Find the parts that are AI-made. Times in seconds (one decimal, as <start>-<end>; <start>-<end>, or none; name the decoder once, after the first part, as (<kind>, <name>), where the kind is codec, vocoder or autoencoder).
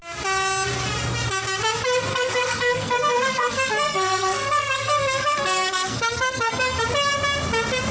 2.1-6.8 (codec, SNAC)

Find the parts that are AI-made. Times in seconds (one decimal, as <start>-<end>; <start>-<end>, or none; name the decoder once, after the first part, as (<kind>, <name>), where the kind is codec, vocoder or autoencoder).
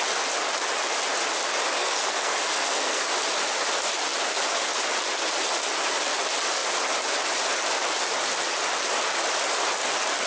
1.8-3.1 (codec, SNAC)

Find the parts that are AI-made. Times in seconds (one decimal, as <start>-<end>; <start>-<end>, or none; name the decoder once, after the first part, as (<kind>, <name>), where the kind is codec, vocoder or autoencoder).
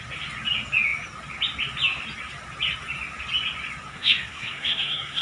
3.9-5.2 (codec, SNAC)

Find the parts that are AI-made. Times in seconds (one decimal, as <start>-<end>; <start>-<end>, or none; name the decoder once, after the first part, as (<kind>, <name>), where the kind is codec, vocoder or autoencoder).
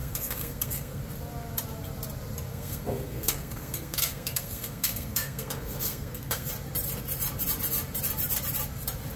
0.0-1.0 (codec, SNAC); 2.5-6.5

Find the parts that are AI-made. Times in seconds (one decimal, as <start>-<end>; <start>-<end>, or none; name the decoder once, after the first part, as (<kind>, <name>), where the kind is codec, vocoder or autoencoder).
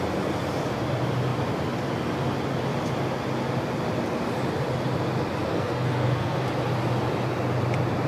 5.5-6.4 (codec, SNAC)